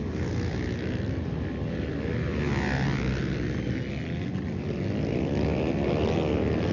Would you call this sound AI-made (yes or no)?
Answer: no